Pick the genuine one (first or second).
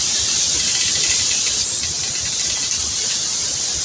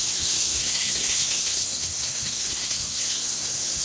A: first